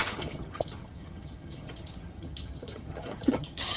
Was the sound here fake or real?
fake